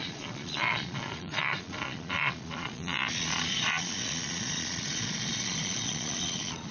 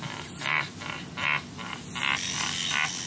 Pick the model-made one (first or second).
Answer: first